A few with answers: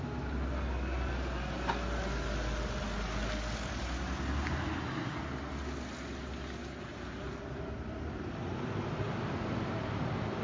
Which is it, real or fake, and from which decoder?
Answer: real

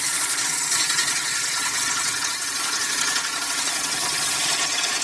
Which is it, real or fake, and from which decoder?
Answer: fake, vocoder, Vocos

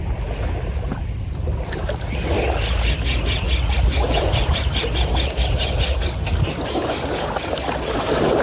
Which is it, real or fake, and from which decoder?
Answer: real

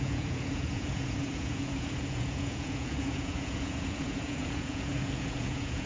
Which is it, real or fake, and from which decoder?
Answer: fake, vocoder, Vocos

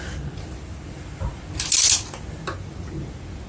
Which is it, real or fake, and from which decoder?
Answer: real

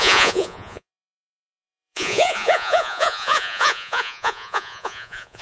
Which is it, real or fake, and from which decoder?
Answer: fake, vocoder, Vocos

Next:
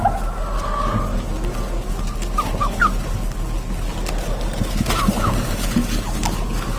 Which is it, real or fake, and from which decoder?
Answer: real